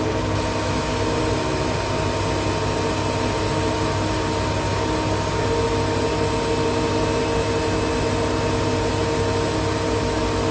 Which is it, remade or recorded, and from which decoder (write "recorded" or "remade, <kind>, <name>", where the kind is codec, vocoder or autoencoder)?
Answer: recorded